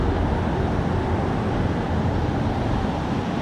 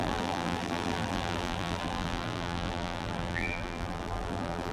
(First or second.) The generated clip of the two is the second